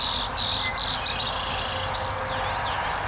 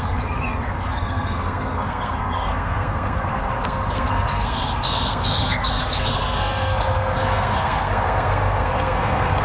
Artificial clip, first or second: second